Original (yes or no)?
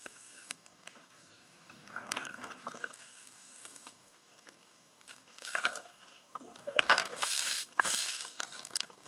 no